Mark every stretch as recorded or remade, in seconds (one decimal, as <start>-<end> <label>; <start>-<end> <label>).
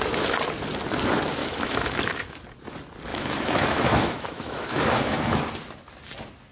0.0-1.4 recorded; 1.4-2.4 remade; 2.4-3.1 recorded; 3.1-5.4 remade; 5.4-6.5 recorded